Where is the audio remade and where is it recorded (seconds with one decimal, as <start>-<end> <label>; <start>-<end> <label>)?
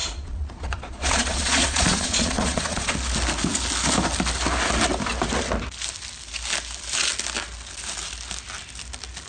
0.0-2.9 remade; 2.9-9.3 recorded